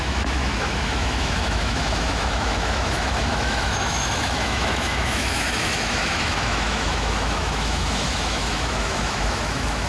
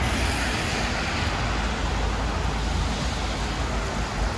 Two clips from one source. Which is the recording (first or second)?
second